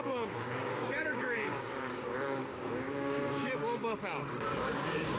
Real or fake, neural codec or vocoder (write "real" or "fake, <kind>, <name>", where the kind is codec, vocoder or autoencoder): fake, codec, DAC